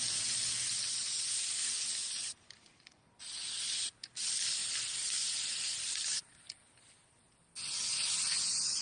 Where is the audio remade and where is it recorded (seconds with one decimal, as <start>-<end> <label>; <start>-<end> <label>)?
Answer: 0.0-8.8 recorded